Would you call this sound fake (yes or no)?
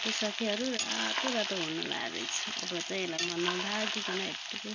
no